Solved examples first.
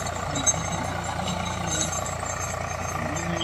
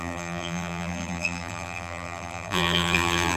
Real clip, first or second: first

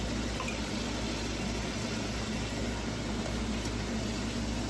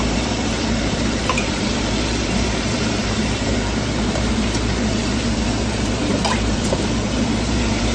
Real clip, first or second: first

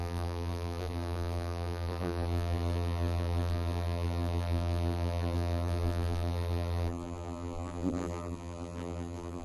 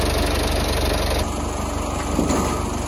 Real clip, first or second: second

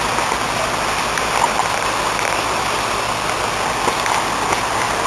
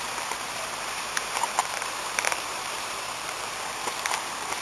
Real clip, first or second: first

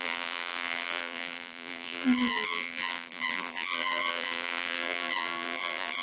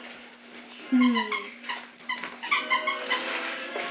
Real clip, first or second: second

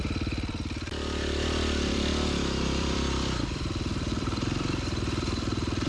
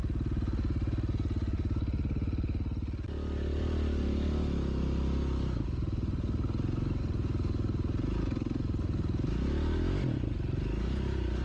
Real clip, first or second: second